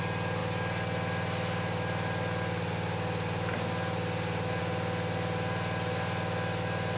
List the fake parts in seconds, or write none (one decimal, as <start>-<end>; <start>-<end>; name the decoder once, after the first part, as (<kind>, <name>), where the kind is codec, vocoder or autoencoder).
none